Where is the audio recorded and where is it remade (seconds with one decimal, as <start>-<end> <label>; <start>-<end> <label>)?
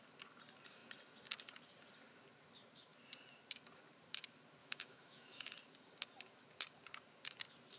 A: 0.0-4.6 recorded; 4.6-5.5 remade; 5.5-7.8 recorded